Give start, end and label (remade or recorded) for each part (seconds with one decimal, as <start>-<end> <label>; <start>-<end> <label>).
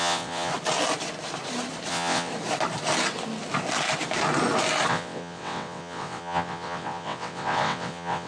0.0-0.5 remade; 0.5-1.9 recorded; 1.9-2.3 remade; 2.3-4.9 recorded; 4.9-8.3 remade